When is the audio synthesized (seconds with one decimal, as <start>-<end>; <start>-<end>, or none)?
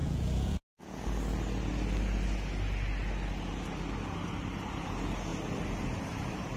0.0-1.0